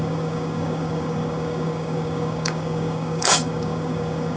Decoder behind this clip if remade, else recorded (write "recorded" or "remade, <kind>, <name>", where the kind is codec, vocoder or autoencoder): remade, codec, DAC